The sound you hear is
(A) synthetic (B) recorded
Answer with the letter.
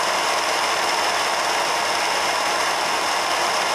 B